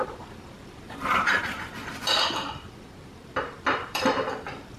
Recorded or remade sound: remade